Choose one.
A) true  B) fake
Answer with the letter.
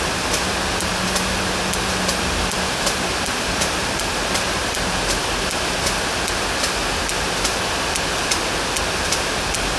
A